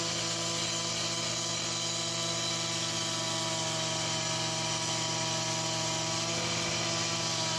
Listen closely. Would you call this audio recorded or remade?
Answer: recorded